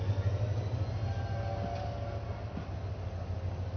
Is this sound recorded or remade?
recorded